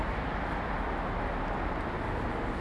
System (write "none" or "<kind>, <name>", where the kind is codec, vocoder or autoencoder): none